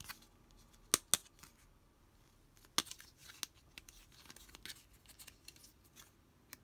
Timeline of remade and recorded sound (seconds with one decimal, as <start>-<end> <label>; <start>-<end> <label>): 0.0-1.2 recorded; 1.2-2.0 remade; 2.0-6.6 recorded

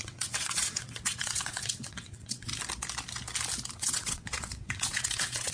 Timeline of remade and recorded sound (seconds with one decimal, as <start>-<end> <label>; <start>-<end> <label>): 0.0-2.5 remade; 2.5-3.7 recorded; 3.7-5.5 remade